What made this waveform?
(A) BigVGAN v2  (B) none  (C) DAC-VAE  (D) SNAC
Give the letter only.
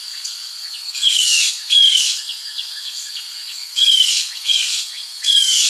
D